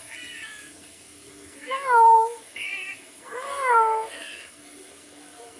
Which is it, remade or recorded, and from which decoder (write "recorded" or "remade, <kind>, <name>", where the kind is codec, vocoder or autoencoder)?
remade, codec, SNAC